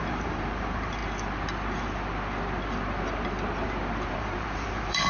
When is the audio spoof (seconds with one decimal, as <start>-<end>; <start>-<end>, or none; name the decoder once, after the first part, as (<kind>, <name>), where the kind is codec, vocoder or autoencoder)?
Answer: 0.0-1.0 (vocoder, BigVGAN v2); 4.1-5.1